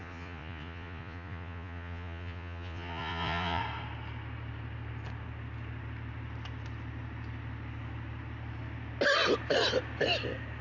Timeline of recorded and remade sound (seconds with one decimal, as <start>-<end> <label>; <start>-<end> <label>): 0.0-3.6 remade; 3.6-10.6 recorded